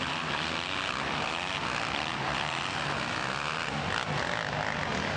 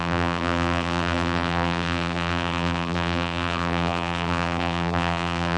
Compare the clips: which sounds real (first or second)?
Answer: first